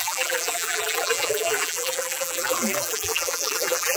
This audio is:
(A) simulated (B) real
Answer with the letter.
A